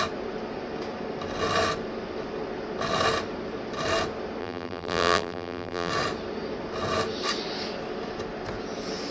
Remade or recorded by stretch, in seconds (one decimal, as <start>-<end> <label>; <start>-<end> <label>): 0.0-4.4 recorded; 4.4-5.9 remade; 5.9-9.1 recorded

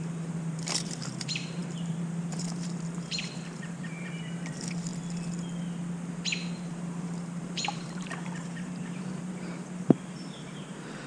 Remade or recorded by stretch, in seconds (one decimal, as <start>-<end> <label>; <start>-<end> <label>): 0.0-4.9 remade; 4.9-6.5 recorded; 6.5-11.1 remade

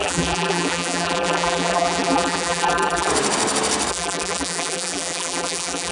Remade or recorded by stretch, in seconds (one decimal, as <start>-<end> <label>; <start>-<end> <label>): 0.0-3.1 remade; 3.1-3.9 recorded; 3.9-5.9 remade

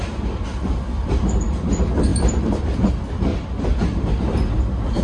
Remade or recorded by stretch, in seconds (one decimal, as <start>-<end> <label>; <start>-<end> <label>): 0.0-1.0 recorded; 1.0-1.7 remade; 1.7-2.1 recorded; 2.1-2.9 remade; 2.9-3.3 recorded; 3.3-4.1 remade; 4.1-5.0 recorded

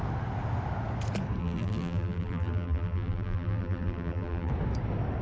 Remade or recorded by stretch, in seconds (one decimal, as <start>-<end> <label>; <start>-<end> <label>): 0.0-1.4 recorded; 1.4-4.5 remade; 4.5-5.2 recorded